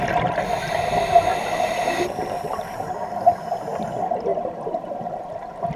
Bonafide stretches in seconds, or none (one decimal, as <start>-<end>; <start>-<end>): 0.0-1.3; 3.2-5.8